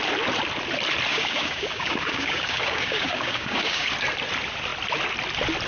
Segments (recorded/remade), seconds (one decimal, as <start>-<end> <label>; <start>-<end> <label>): 0.0-1.1 recorded; 1.1-3.9 remade; 3.9-5.7 recorded